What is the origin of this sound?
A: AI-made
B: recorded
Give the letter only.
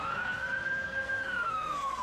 A